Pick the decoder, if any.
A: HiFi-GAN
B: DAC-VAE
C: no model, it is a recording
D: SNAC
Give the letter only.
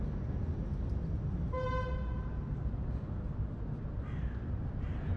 C